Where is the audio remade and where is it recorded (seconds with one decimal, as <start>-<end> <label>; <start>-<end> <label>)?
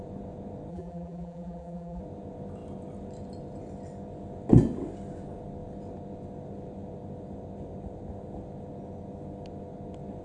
0.0-0.7 recorded; 0.7-2.0 remade; 2.0-10.2 recorded